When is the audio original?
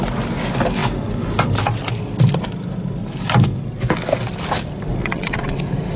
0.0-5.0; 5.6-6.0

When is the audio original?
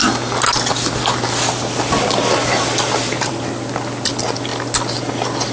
0.0-5.5